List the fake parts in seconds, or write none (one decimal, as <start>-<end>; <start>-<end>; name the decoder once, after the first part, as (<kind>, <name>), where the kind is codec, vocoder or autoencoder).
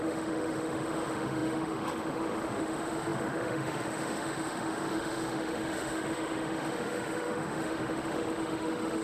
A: 0.0-9.0 (autoencoder, DAC-VAE)